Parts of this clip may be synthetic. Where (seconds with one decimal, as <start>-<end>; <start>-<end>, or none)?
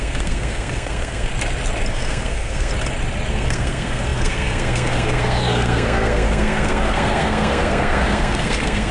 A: 0.0-1.3; 1.9-2.7; 3.3-8.9